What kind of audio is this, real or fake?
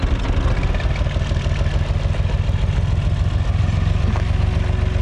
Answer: real